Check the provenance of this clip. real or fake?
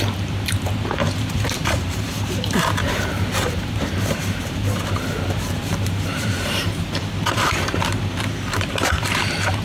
fake